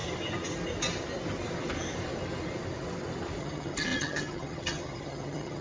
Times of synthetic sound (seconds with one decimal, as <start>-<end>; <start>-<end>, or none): 3.4-5.6